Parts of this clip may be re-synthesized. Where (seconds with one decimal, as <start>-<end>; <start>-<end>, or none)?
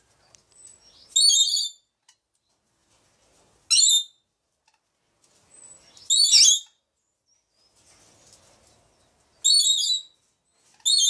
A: none